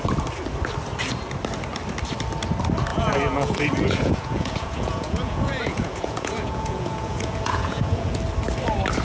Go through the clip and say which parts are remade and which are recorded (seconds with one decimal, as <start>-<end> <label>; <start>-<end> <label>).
0.0-2.9 recorded; 2.9-8.2 remade; 8.2-9.0 recorded